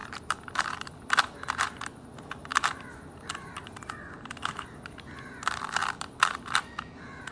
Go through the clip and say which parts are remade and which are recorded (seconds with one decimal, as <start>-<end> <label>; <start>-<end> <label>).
0.0-0.5 remade; 0.5-7.3 recorded